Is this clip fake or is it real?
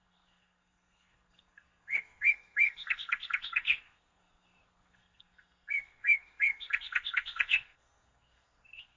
fake